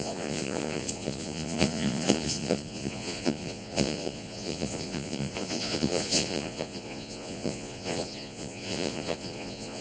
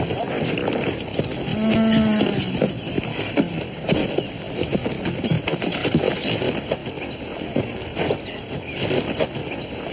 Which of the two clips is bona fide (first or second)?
second